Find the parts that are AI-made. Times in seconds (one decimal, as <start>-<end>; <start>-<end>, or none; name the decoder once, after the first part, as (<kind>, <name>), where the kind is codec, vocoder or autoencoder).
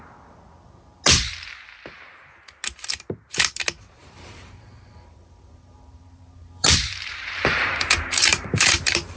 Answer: 4.0-9.2 (vocoder, BigVGAN v2)